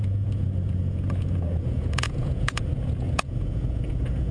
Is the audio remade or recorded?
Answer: remade